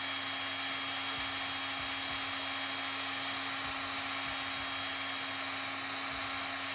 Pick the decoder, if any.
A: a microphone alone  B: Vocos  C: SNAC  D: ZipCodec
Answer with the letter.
A